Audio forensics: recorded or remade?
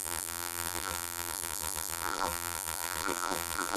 remade